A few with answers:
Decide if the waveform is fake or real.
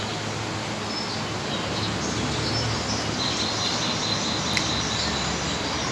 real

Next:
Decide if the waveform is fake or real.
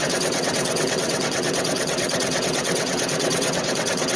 fake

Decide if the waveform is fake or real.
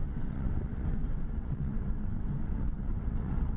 fake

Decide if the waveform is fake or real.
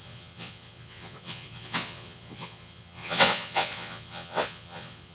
fake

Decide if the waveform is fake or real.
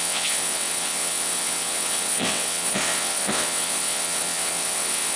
fake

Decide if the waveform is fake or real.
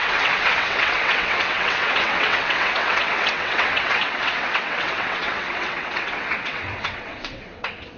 fake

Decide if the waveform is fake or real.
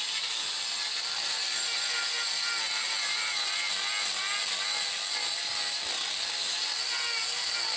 real